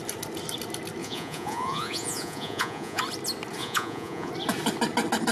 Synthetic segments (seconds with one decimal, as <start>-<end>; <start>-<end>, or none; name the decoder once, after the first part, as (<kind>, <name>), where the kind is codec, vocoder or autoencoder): 1.0-3.0 (vocoder, Vocos); 3.6-4.3